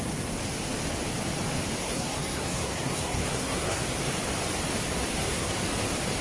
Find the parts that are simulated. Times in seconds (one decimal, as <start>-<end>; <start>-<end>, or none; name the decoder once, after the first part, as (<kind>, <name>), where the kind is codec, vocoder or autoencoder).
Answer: 1.8-3.8 (codec, SNAC); 5.1-5.6

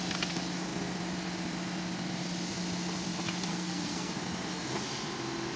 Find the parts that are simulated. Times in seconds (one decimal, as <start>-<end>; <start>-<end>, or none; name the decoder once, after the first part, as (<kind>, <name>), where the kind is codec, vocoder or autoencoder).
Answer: 3.5-4.1 (codec, SNAC)